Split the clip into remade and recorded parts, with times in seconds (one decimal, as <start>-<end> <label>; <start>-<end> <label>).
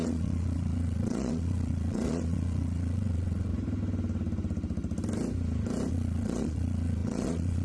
0.0-3.5 remade; 3.5-5.9 recorded; 5.9-7.6 remade